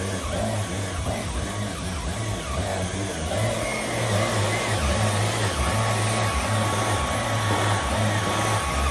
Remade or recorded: recorded